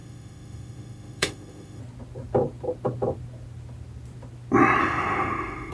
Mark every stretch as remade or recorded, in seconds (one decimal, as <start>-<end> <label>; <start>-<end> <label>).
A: 0.0-1.8 remade; 1.8-4.8 recorded; 4.8-5.7 remade